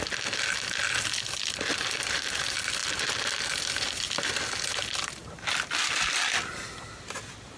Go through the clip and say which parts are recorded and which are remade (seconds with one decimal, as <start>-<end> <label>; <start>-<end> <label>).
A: 0.0-7.6 recorded